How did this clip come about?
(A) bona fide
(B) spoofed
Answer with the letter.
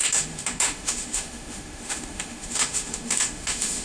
B